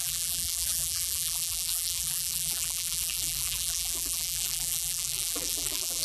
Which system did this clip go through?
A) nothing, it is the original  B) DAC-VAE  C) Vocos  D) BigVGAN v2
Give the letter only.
D